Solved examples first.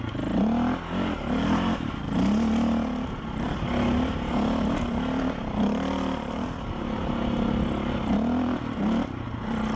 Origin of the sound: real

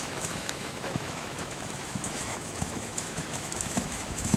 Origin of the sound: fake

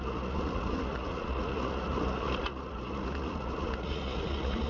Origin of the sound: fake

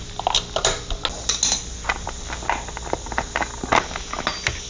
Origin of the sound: real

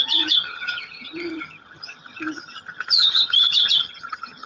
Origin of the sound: fake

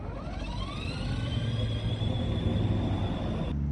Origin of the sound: real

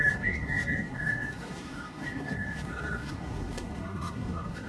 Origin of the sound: fake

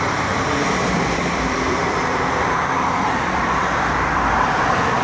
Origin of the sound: fake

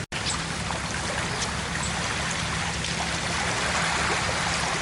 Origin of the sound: real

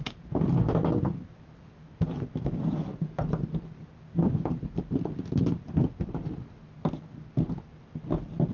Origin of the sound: real